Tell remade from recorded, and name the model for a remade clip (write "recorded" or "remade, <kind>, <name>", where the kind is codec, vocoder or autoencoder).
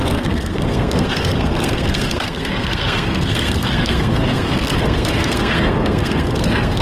remade, codec, SNAC